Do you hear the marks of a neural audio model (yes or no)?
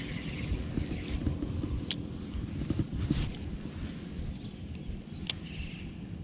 no